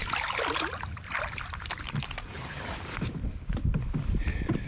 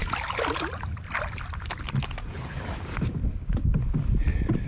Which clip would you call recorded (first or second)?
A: second